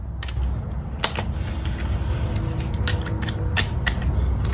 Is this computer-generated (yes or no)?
no